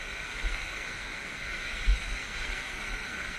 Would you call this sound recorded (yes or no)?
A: no